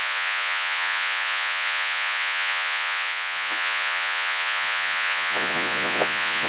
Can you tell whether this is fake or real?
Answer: fake